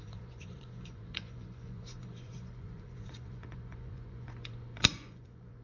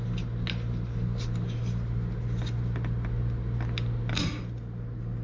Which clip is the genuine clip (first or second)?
second